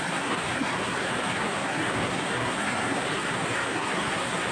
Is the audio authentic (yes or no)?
no